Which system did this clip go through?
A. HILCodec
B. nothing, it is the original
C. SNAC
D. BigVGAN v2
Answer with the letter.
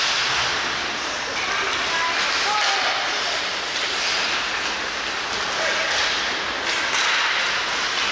B